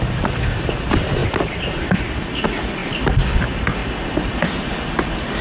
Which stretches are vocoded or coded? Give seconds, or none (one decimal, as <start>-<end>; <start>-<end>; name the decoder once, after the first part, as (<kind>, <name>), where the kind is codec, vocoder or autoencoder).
1.2-2.0 (vocoder, BigVGAN v2); 2.8-3.4; 3.8-4.6